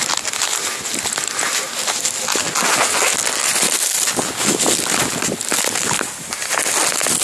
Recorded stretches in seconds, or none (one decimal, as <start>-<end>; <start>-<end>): 1.6-3.5; 4.3-7.2